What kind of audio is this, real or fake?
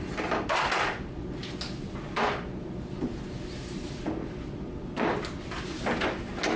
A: real